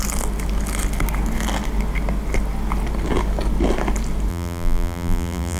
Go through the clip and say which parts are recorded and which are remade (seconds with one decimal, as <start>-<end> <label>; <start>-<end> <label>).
0.0-4.3 recorded; 4.3-5.6 remade